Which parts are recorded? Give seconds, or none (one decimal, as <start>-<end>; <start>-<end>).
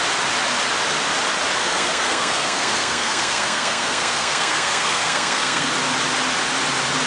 0.0-1.6; 5.7-7.1